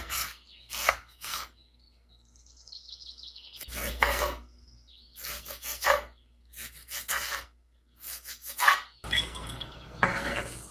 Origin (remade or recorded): remade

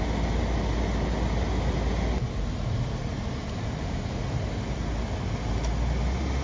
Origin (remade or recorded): recorded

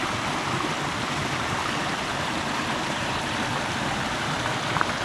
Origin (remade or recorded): recorded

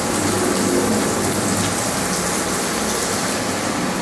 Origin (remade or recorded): recorded